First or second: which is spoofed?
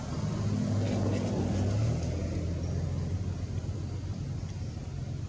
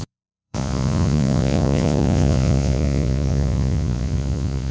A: second